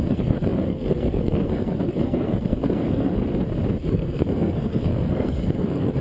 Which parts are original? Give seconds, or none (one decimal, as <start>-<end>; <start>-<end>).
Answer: 3.2-3.9

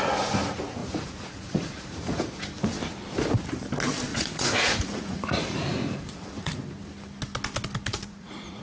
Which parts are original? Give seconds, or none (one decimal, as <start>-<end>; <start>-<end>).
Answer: 0.0-0.8; 2.4-4.1; 6.5-7.9

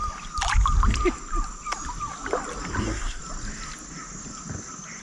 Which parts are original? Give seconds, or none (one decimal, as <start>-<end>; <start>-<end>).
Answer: 0.0-2.8; 3.2-5.0